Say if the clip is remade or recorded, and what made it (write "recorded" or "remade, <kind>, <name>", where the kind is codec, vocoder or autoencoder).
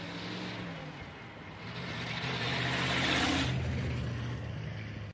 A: recorded